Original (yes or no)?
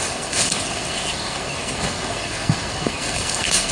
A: no